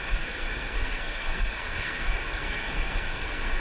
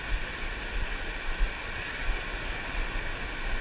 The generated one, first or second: first